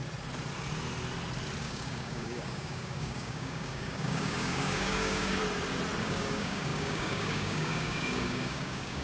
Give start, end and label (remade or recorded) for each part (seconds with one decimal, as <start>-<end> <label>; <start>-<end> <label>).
0.0-1.6 recorded; 1.6-5.4 remade; 5.4-6.0 recorded; 6.0-9.0 remade